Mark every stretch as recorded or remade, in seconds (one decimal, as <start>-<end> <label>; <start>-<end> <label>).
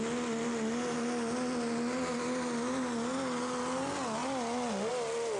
0.0-5.4 recorded